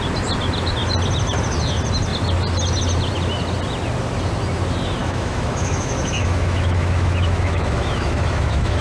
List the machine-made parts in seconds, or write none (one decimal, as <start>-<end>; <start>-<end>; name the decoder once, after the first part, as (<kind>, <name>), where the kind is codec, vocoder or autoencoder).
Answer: 5.0-8.8 (autoencoder, DAC-VAE)

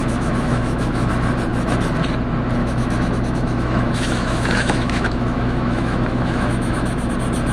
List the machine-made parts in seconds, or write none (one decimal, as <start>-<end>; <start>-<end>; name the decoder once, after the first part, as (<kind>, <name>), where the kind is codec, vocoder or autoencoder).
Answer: 0.0-1.1 (autoencoder, DAC-VAE); 2.6-7.1